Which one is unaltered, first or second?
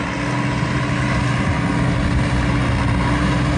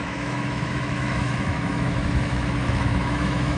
first